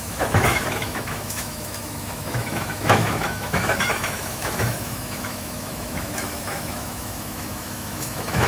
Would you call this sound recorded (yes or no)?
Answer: no